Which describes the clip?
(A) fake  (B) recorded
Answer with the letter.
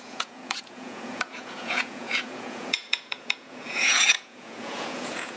A